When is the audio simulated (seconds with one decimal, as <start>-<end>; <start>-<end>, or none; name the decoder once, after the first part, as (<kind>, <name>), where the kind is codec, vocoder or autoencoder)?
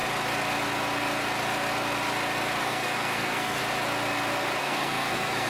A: 2.6-3.6 (codec, SNAC); 4.6-5.5